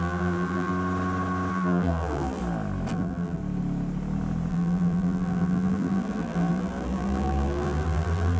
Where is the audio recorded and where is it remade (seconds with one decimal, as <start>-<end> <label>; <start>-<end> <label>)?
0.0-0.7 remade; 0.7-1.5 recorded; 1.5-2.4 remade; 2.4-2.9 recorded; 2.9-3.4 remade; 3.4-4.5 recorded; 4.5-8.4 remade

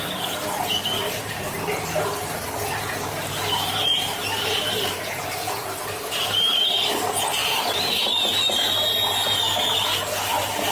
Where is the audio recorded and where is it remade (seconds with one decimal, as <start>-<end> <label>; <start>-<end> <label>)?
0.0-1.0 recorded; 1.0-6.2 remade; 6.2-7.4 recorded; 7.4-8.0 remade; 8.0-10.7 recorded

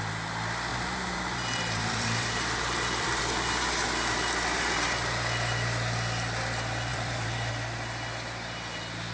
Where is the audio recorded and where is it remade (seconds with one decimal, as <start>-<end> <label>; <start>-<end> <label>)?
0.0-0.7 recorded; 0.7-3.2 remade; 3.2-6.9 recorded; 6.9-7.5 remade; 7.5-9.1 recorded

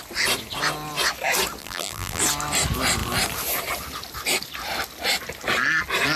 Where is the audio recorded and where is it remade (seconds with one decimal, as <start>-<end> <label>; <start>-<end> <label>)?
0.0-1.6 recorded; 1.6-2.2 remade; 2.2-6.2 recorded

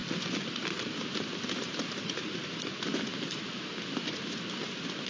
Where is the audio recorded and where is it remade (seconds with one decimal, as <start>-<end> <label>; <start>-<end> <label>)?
0.0-0.6 recorded; 0.6-2.4 remade; 2.4-5.1 recorded